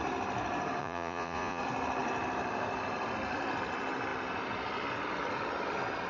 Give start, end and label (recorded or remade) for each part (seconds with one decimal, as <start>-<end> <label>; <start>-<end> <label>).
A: 0.0-0.8 recorded; 0.8-1.6 remade; 1.6-6.1 recorded